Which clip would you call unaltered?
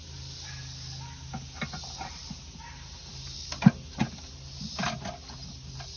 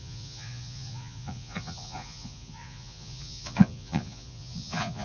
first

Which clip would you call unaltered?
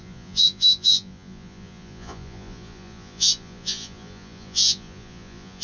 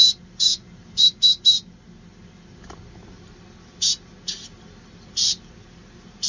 second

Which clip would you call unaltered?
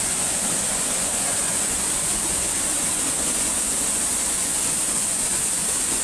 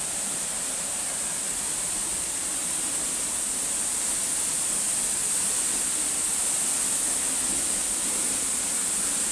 second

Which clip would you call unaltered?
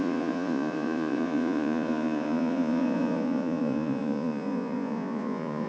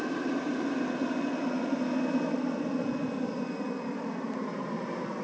second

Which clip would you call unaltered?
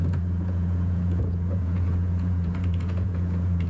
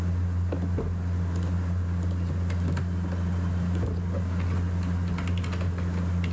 second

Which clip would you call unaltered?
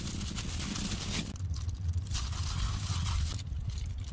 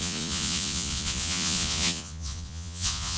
first